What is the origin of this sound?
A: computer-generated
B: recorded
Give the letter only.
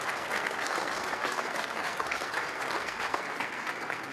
A